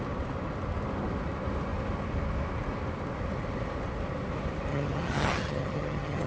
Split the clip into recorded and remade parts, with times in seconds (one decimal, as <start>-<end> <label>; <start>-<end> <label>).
0.0-4.7 recorded; 4.7-6.3 remade